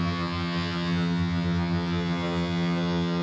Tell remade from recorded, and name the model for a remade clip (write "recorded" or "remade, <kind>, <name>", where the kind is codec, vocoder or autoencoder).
remade, vocoder, HiFi-GAN